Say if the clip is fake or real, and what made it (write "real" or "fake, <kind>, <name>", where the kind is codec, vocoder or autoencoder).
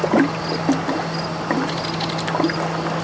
real